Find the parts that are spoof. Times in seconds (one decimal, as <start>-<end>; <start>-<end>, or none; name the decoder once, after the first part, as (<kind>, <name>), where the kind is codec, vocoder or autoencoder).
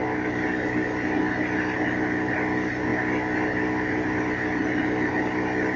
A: none